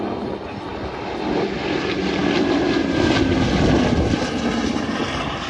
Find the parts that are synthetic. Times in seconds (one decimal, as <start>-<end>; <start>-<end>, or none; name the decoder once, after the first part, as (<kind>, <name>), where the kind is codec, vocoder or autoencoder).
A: none